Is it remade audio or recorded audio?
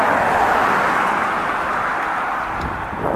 recorded